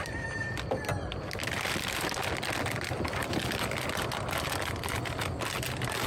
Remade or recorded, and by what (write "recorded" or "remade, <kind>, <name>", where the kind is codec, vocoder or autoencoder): recorded